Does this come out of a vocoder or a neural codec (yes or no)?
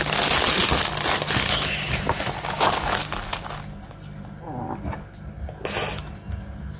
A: no